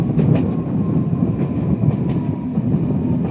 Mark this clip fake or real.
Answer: fake